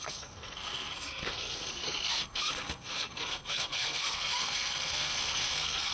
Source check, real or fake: fake